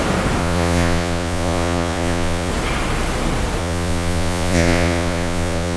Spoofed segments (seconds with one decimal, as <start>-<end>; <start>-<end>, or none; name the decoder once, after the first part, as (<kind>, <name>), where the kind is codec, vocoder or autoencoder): 0.4-2.5 (vocoder, Vocos); 3.6-5.8